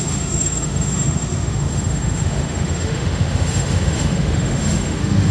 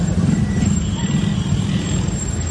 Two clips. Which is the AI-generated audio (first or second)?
first